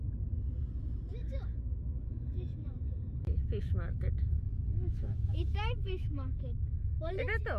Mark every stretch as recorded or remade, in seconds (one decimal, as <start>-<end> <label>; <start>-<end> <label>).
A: 0.0-1.1 recorded; 1.1-4.5 remade; 4.5-5.0 recorded; 5.0-7.1 remade; 7.1-7.6 recorded